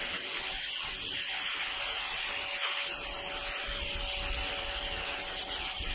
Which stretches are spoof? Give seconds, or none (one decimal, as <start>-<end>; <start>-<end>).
none